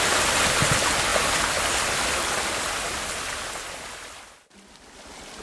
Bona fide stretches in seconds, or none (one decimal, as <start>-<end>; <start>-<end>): 0.0-5.4